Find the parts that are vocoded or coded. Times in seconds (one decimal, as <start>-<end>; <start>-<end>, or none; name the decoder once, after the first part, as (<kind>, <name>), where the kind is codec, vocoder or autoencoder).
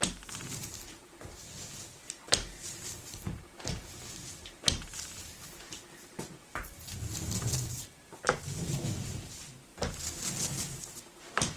0.0-9.7 (vocoder, BigVGAN v2); 10.6-11.6